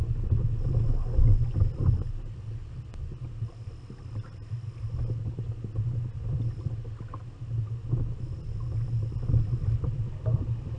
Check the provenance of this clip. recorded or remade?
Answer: recorded